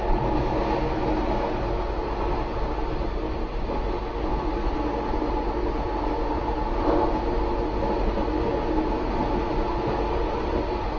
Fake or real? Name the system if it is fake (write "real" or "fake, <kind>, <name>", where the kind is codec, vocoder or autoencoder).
real